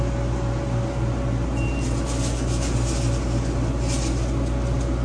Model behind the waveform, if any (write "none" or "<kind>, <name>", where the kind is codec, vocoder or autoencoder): none